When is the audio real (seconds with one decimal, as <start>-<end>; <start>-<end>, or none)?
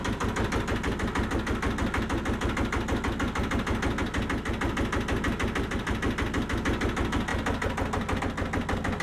0.0-9.0